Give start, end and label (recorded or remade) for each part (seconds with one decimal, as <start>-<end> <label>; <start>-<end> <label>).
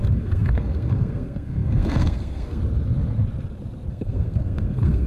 0.0-2.6 remade; 2.6-3.9 recorded; 3.9-5.1 remade